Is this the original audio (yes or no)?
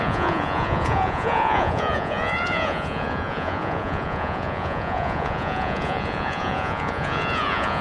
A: no